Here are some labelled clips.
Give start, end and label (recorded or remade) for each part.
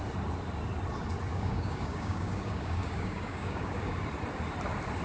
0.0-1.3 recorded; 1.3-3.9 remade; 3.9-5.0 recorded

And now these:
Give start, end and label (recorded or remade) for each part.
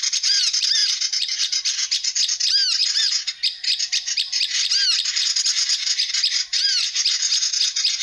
0.0-8.0 recorded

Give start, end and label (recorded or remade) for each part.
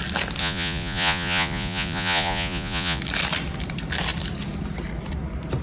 0.0-0.4 recorded; 0.4-3.0 remade; 3.0-5.6 recorded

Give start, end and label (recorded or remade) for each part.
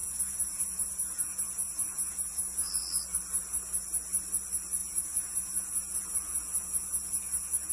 0.0-2.7 remade; 2.7-4.8 recorded; 4.8-7.7 remade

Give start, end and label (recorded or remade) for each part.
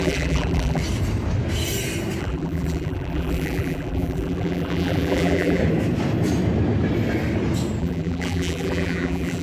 0.0-0.8 remade; 0.8-2.2 recorded; 2.2-5.6 remade; 5.6-7.8 recorded; 7.8-9.4 remade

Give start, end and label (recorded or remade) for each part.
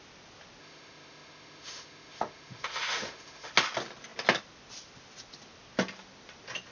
0.0-0.6 recorded; 0.6-3.5 remade; 3.5-6.7 recorded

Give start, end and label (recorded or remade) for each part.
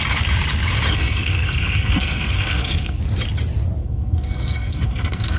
0.0-0.9 recorded; 0.9-3.0 remade; 3.0-3.8 recorded; 3.8-5.4 remade